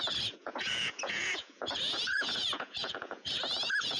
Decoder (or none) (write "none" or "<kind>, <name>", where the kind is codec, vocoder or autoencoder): vocoder, Vocos